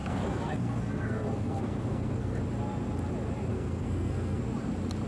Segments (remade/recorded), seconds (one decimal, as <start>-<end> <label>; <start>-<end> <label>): 0.0-2.4 remade; 2.4-3.5 recorded; 3.5-4.4 remade; 4.4-5.1 recorded